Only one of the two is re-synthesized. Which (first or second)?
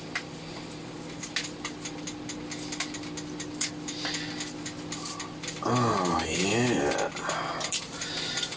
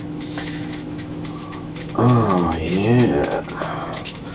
second